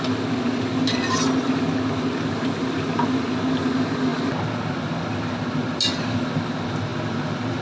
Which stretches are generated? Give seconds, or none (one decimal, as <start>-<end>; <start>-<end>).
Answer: none